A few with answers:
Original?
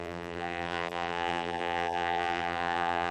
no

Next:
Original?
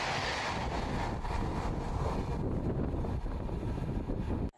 yes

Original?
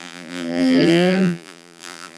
no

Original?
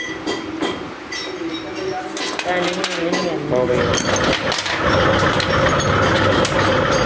yes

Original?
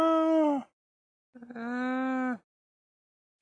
yes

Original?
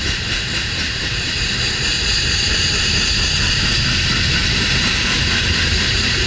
no